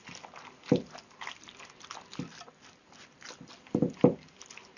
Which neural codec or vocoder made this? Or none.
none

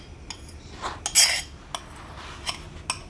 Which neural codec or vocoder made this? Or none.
none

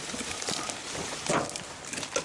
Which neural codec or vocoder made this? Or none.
none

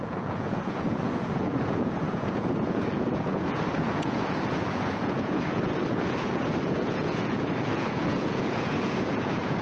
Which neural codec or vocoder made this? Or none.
vocoder, Vocos